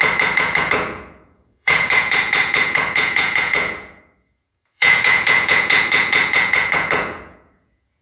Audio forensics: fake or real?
fake